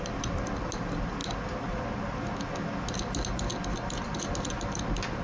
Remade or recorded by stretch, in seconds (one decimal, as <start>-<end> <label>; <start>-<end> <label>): 0.0-5.2 recorded